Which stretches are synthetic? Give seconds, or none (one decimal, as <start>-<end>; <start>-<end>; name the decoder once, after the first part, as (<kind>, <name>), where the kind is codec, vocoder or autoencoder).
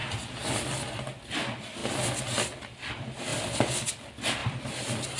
none